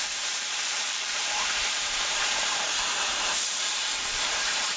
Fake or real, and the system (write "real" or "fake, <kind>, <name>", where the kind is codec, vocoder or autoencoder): fake, vocoder, BigVGAN v2